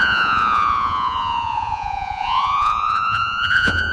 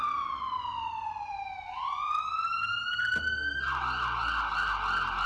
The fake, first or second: first